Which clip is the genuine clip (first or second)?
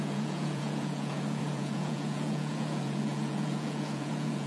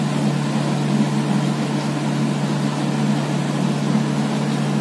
second